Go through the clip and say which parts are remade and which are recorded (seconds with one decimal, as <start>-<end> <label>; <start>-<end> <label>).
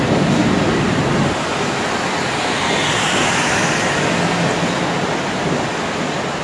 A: 0.0-6.4 recorded